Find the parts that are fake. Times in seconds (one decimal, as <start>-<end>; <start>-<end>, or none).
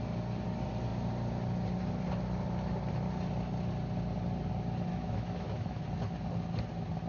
4.9-5.8